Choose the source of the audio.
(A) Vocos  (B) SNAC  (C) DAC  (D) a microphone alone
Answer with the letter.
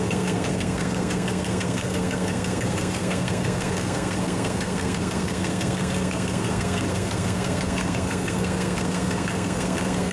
B